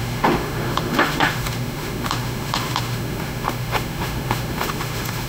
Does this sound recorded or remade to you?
remade